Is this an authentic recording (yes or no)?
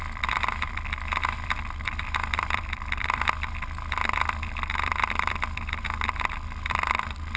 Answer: no